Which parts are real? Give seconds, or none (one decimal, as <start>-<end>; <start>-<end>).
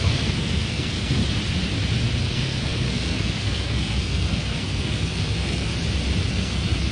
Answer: 1.2-2.2; 5.7-6.3